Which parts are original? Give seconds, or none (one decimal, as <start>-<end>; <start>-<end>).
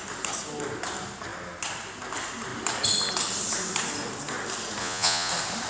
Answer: 0.0-4.8; 5.3-5.7